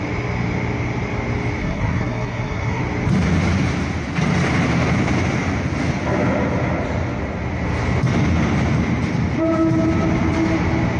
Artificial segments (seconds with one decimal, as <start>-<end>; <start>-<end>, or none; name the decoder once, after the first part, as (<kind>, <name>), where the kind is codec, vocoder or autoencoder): 1.6-2.8 (codec, SNAC)